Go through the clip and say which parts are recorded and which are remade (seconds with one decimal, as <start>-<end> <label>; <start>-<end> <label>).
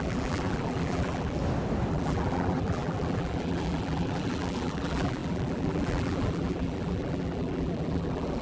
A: 0.0-1.4 remade; 1.4-1.9 recorded; 1.9-8.4 remade